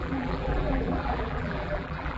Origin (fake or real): fake